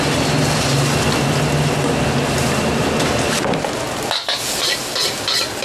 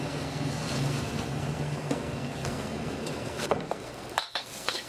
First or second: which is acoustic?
first